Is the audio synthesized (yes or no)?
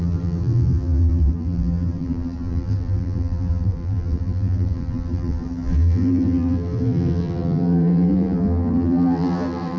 yes